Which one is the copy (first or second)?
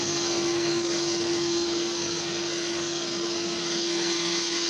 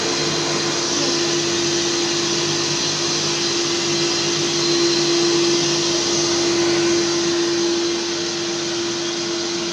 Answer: first